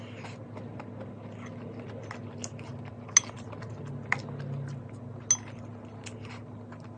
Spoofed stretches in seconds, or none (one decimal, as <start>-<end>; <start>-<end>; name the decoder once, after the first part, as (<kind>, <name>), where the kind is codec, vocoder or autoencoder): none